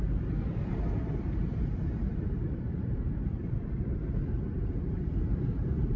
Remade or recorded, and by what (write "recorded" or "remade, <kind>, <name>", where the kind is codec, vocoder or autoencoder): remade, vocoder, BigVGAN v2